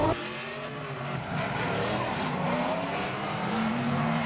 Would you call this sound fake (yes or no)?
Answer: yes